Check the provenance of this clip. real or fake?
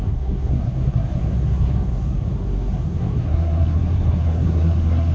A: fake